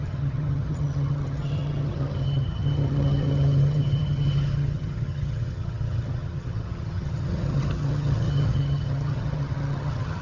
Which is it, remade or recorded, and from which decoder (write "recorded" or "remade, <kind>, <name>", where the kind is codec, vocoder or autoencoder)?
remade, vocoder, HiFi-GAN